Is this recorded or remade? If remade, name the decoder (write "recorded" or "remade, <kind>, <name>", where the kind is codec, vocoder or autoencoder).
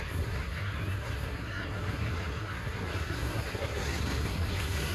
remade, codec, SNAC